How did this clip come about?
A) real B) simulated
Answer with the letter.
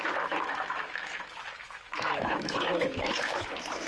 B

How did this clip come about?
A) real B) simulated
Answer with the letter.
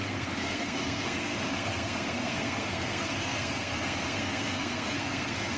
B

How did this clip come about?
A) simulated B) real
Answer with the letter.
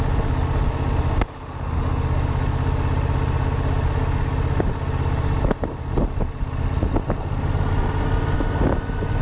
B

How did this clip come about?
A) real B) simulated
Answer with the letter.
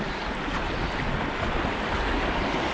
A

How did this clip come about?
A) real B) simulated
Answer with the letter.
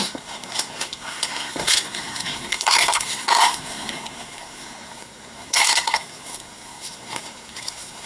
B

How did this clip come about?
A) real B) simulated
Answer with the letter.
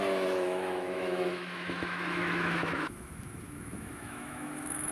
B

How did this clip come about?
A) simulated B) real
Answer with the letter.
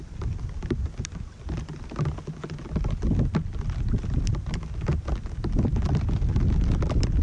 B